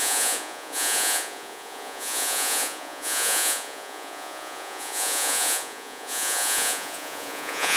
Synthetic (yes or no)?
yes